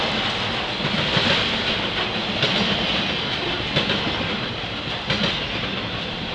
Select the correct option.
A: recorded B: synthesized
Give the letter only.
A